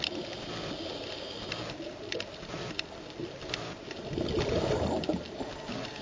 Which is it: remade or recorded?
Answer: recorded